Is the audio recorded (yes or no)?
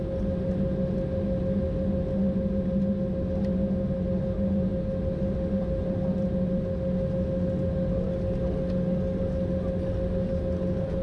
yes